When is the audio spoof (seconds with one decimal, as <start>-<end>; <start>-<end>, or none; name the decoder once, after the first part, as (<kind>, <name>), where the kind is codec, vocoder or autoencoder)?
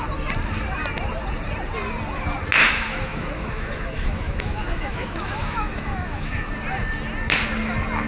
2.6-6.5 (autoencoder, DAC-VAE)